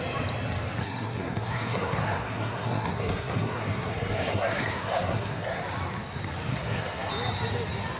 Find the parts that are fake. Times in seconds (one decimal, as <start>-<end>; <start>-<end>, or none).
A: 0.8-5.6; 6.5-7.1